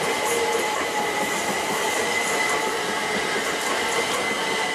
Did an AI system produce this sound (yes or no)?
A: no